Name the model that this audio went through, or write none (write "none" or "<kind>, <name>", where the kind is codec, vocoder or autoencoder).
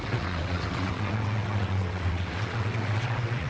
vocoder, WaveNeXt